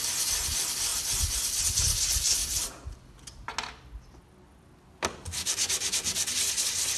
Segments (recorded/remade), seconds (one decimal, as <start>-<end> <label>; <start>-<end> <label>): 0.0-7.0 recorded